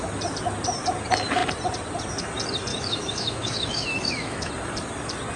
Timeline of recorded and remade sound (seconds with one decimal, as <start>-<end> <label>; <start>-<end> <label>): 0.0-2.7 recorded; 2.7-4.5 remade; 4.5-5.4 recorded